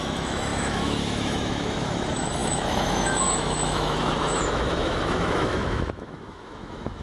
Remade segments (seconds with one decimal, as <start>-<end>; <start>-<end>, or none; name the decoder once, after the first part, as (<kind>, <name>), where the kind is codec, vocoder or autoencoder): 0.0-7.0 (autoencoder, DAC-VAE)